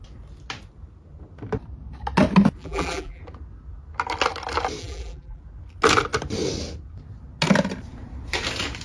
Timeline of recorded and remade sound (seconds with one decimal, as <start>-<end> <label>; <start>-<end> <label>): 0.0-2.6 recorded; 2.6-3.2 remade; 3.2-4.8 recorded; 4.8-5.4 remade; 5.4-8.8 recorded